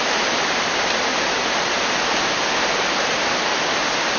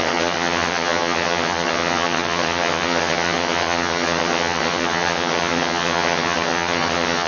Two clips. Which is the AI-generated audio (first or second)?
second